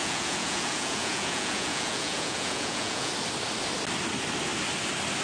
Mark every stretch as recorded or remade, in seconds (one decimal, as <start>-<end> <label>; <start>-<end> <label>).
0.0-3.1 remade; 3.1-5.2 recorded